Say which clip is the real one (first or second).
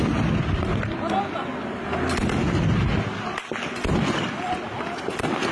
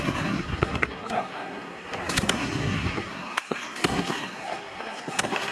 first